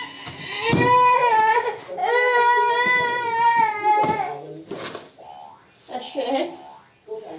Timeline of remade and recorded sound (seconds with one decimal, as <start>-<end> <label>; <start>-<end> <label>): 0.0-2.0 recorded; 2.0-2.7 remade; 2.7-7.4 recorded